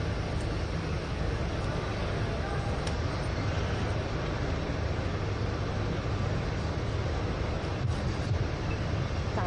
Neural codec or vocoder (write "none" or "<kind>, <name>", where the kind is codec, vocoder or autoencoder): none